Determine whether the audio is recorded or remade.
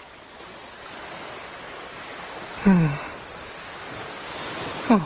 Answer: recorded